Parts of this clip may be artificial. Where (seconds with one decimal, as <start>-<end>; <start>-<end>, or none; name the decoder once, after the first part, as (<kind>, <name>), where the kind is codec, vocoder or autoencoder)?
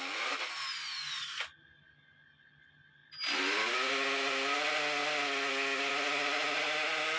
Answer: none